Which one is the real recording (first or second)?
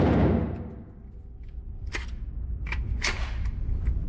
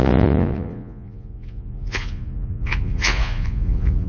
first